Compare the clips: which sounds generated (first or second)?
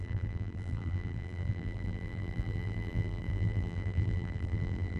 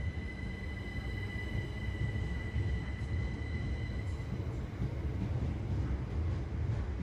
first